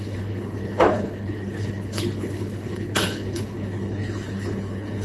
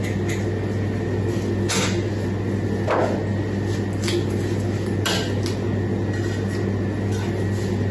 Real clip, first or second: second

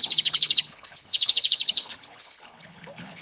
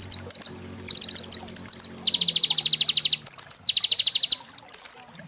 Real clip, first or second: second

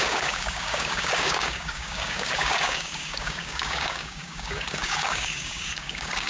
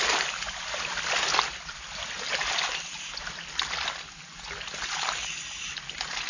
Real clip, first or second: second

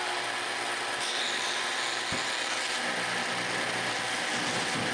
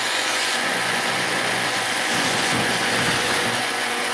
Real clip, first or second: first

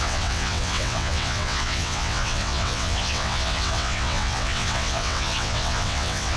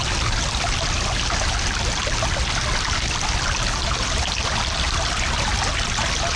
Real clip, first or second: second